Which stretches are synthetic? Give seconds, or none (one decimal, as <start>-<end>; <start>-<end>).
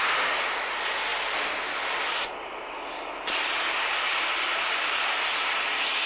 none